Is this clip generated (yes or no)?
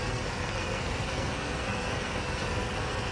yes